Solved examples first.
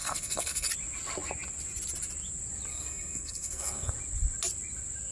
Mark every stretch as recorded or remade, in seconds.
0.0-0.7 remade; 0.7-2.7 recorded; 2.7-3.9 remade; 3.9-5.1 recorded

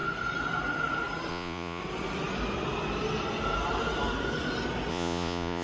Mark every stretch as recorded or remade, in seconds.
0.0-1.3 recorded; 1.3-1.8 remade; 1.8-4.9 recorded; 4.9-5.6 remade

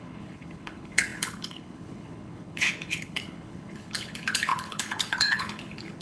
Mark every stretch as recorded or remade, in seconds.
0.0-6.0 remade

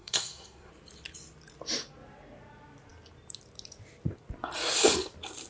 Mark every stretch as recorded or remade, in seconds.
0.0-0.7 remade; 0.7-5.5 recorded

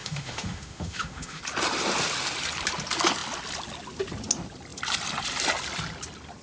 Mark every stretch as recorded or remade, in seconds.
0.0-1.4 remade; 1.4-6.4 recorded

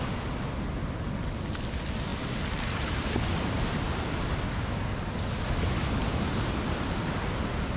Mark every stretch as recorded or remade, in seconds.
0.0-7.8 recorded